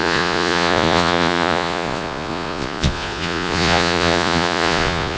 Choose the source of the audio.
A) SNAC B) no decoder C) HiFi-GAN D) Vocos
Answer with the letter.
D